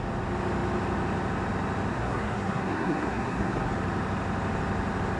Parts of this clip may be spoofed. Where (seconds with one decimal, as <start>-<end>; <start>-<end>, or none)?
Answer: 1.9-3.7